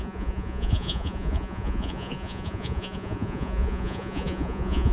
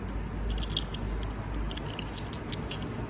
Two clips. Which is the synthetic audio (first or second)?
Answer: first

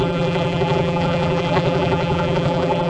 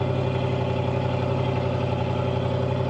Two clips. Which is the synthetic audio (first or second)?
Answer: first